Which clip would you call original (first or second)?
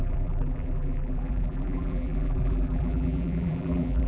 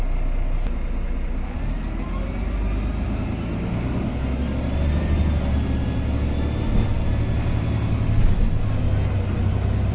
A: second